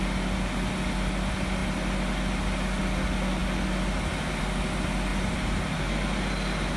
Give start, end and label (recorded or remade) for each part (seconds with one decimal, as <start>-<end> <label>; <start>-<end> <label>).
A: 0.0-5.1 recorded; 5.1-5.8 remade; 5.8-6.8 recorded

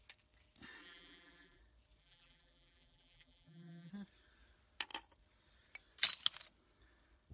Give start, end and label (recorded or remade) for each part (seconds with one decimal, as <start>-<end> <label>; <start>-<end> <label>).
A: 0.0-0.8 recorded; 0.8-1.6 remade; 1.6-2.0 recorded; 2.0-3.9 remade; 3.9-7.3 recorded

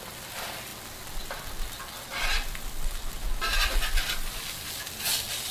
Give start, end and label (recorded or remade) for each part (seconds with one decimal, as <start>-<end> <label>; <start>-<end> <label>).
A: 0.0-5.5 recorded

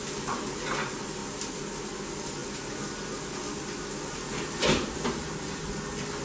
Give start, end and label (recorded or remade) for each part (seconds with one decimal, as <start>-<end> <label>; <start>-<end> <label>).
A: 0.0-6.2 recorded

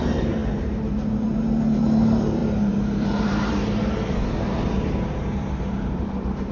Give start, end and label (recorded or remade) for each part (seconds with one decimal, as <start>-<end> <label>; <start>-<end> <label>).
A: 0.0-6.5 remade

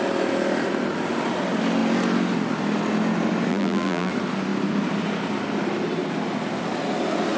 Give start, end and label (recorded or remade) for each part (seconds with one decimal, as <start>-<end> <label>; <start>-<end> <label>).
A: 0.0-3.5 recorded; 3.5-4.1 remade; 4.1-7.4 recorded

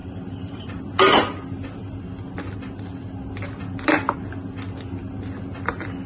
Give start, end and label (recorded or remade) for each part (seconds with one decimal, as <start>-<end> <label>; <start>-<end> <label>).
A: 0.0-0.8 remade; 0.8-6.1 recorded